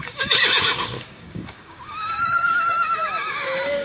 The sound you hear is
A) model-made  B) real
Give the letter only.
A